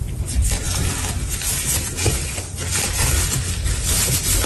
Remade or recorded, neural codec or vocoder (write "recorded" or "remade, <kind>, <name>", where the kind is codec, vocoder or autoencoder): recorded